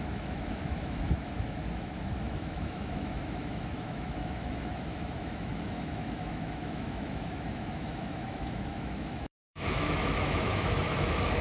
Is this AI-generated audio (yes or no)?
yes